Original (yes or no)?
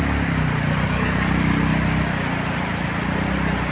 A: yes